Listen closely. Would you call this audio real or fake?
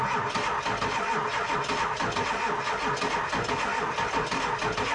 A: real